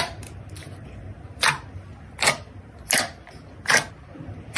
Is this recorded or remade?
recorded